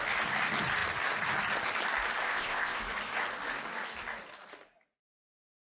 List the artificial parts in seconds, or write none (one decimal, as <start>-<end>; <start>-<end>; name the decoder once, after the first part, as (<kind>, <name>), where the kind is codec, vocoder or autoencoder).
2.2-2.8 (codec, ZipCodec)